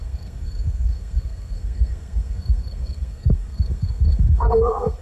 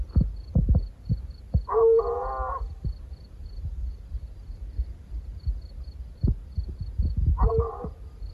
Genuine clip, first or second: second